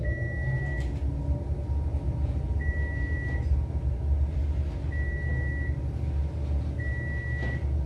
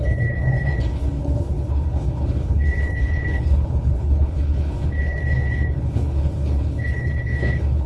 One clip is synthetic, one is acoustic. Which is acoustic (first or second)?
first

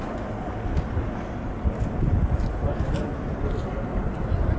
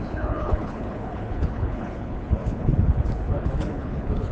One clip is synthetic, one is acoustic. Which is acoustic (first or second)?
first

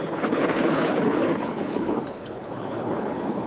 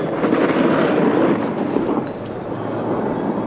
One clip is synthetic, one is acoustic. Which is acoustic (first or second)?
second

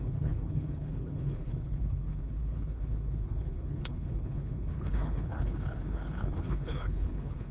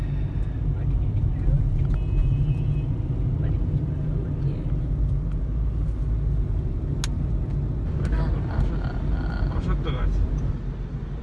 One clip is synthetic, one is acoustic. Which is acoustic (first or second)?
second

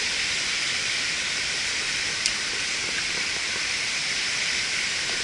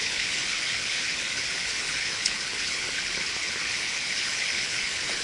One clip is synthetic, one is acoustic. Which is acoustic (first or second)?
first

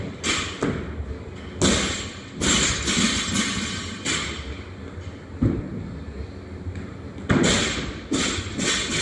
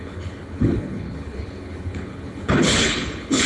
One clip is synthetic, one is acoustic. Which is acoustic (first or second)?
first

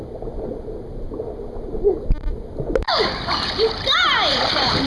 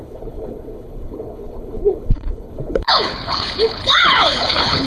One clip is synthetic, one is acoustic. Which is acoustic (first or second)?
first